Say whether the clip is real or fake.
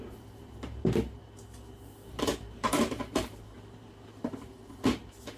fake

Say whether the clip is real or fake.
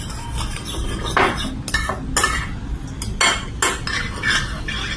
real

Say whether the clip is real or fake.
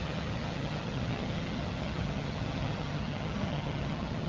fake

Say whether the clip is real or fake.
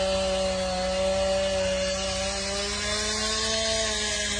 real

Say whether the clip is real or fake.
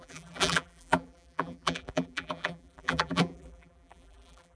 fake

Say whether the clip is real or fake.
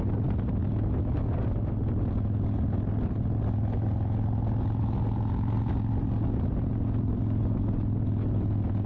real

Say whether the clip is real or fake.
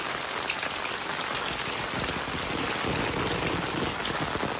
real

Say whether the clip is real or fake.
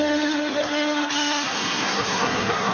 fake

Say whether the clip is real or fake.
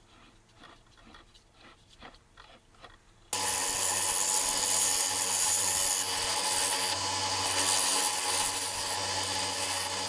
real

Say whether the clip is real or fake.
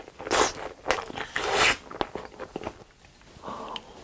real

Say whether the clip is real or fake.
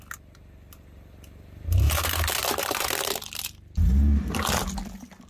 real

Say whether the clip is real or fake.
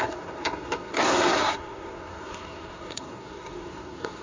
fake